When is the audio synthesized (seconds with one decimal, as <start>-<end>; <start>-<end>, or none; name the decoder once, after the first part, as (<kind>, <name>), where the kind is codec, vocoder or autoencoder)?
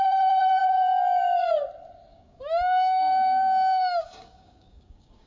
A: 0.6-1.5 (codec, DAC); 2.1-5.3